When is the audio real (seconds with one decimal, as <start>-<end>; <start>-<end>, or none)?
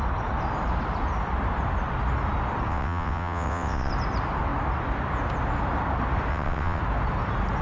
0.0-2.7; 3.9-6.3; 6.8-7.6